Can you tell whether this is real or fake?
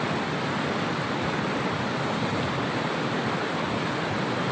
real